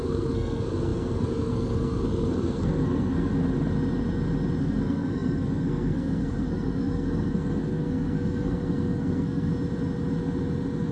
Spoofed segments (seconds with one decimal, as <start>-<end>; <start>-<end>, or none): 0.0-3.3; 4.6-9.5